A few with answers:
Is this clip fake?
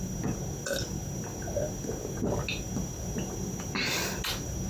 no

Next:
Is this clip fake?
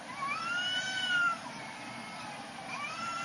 yes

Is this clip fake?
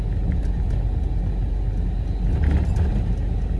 no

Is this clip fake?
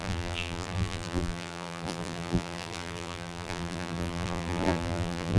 yes